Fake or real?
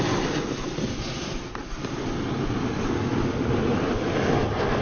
real